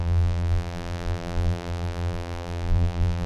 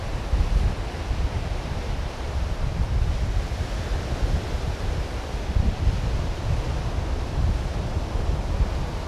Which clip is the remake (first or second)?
first